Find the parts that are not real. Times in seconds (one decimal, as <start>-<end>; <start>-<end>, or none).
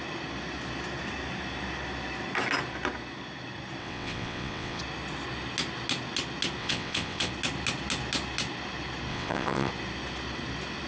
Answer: 3.8-4.8; 6.6-7.3; 9.1-9.7